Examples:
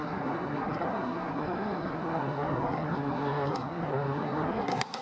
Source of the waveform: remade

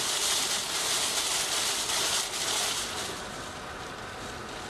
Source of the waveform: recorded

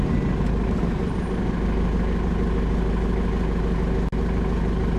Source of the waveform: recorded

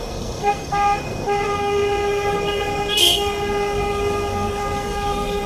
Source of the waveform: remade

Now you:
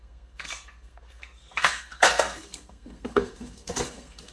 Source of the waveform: remade